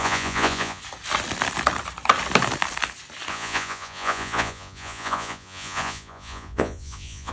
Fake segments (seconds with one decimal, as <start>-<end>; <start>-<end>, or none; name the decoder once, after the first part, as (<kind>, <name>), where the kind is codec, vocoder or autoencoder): 0.0-0.8 (vocoder, Vocos); 3.3-7.3